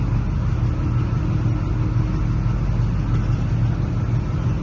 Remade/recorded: recorded